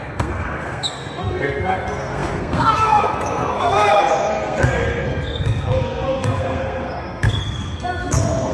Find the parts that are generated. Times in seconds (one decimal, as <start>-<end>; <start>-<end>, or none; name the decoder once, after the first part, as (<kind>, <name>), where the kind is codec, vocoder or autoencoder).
0.0-8.5 (codec, SNAC)